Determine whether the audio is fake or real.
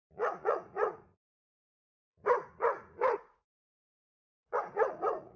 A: fake